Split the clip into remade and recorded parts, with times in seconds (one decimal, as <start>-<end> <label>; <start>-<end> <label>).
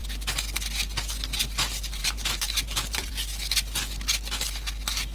0.0-2.0 recorded; 2.0-3.1 remade; 3.1-5.1 recorded